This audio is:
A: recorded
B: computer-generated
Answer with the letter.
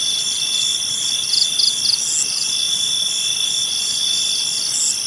A